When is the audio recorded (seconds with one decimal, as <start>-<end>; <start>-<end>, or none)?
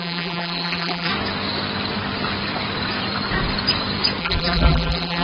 1.1-4.2